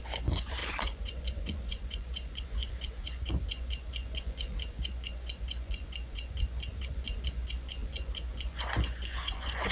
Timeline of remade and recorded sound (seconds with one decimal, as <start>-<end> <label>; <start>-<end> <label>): 0.0-9.7 remade